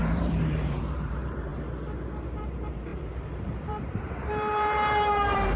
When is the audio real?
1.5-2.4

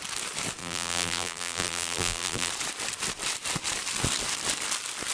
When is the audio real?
0.0-0.6; 2.5-5.1

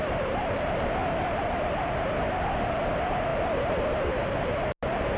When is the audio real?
0.0-1.0; 2.7-5.2

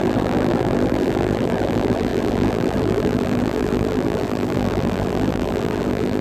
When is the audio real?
none

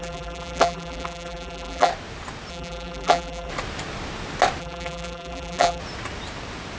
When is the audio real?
1.9-2.5; 3.5-4.6; 5.8-6.8

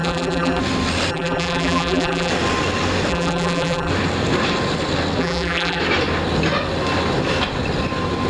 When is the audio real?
0.6-1.1; 2.3-3.1; 3.9-5.2; 5.8-8.3